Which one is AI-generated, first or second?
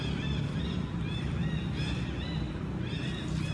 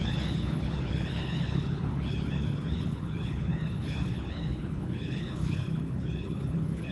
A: second